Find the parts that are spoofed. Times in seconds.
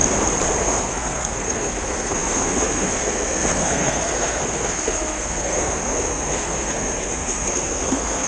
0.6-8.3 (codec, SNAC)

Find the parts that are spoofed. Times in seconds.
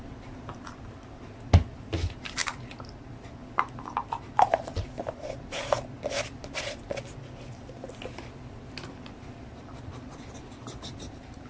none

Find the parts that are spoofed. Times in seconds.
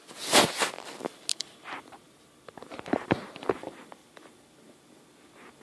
1.3-4.7 (vocoder, BigVGAN v2)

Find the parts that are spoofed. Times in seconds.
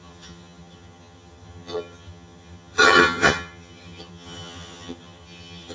0.0-5.7 (vocoder, HiFi-GAN)